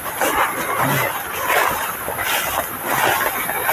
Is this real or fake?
real